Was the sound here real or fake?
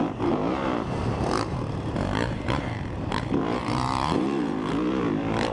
fake